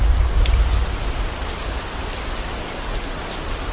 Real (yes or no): yes